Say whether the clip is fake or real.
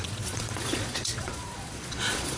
fake